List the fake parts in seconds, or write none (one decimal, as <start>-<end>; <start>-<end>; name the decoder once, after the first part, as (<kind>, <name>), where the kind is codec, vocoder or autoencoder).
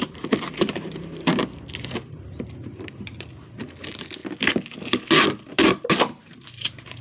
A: 0.0-4.2 (vocoder, BigVGAN v2); 6.0-7.0